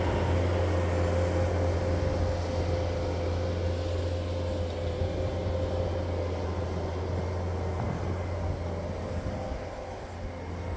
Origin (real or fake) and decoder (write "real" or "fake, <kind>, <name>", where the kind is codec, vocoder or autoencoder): real